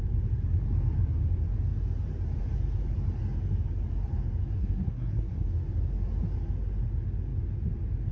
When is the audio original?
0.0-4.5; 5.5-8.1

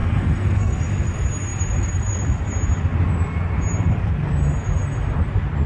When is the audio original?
0.8-5.7

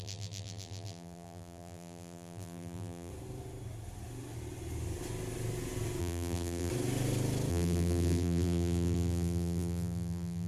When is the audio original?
3.1-6.0; 6.7-7.5